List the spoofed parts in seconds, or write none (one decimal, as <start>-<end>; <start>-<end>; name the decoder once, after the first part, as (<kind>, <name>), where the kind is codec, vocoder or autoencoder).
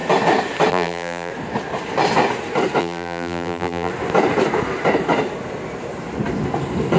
0.7-1.3 (vocoder, BigVGAN v2); 2.8-3.9